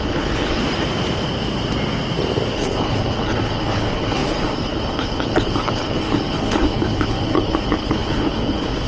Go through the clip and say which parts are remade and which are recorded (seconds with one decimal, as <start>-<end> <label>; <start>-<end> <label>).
0.0-0.6 remade; 0.6-2.5 recorded; 2.5-8.9 remade